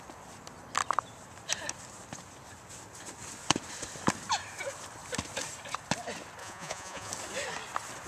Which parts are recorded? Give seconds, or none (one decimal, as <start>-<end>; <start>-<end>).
0.0-6.4; 7.1-8.1